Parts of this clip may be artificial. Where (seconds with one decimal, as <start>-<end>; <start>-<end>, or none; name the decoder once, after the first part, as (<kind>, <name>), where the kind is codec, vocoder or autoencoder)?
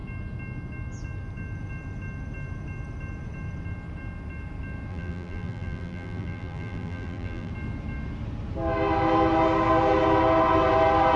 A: 4.9-7.5 (vocoder, BigVGAN v2)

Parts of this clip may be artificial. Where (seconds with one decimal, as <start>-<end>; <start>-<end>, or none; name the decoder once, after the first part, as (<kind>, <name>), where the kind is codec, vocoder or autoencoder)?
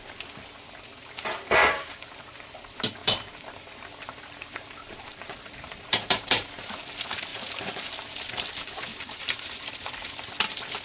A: 1.6-2.2 (vocoder, BigVGAN v2); 3.0-6.5; 7.3-7.9; 8.9-9.5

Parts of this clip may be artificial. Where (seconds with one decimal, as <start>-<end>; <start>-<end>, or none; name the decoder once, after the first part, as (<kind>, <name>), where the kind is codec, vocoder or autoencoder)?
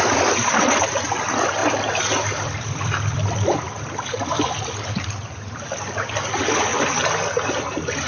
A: 0.0-1.6 (vocoder, BigVGAN v2); 2.4-6.7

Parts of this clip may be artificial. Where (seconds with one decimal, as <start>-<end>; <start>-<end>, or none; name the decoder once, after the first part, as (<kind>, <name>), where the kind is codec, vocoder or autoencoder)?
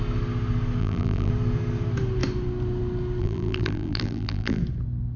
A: 0.8-1.3 (vocoder, BigVGAN v2); 3.2-4.6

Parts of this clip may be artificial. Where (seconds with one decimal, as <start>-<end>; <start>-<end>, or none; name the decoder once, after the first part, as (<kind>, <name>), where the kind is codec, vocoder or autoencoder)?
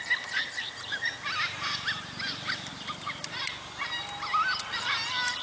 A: 0.4-1.1 (vocoder, BigVGAN v2); 2.7-3.2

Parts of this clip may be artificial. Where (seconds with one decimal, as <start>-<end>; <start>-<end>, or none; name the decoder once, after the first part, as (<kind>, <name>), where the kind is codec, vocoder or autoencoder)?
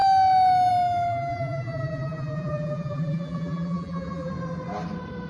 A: 1.1-4.3 (vocoder, BigVGAN v2)